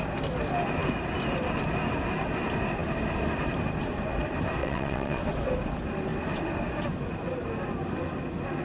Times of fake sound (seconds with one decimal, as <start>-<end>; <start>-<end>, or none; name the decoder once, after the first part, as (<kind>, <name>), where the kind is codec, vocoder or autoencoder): 4.6-5.2 (vocoder, WaveNeXt)